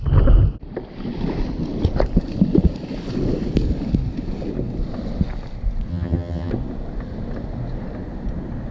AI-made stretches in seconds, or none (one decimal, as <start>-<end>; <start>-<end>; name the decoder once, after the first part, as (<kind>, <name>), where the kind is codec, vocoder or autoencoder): 5.9-6.5 (vocoder, HiFi-GAN)